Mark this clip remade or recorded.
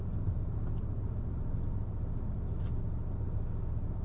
recorded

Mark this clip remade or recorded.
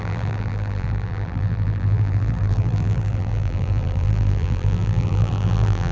remade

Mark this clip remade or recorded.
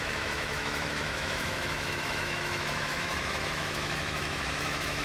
remade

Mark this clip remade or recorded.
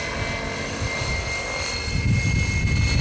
recorded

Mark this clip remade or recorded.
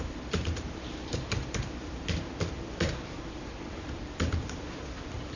recorded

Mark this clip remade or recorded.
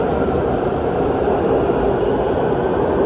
recorded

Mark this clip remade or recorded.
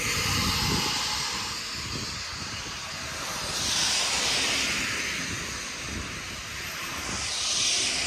recorded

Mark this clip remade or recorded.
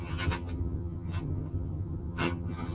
remade